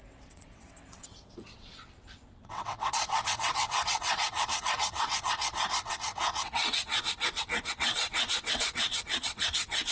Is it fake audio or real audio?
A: fake